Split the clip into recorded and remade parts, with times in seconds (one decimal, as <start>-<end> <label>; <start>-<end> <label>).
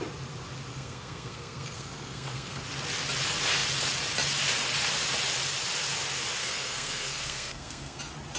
0.0-0.7 recorded; 0.7-2.6 remade; 2.6-6.4 recorded; 6.4-8.0 remade; 8.0-8.4 recorded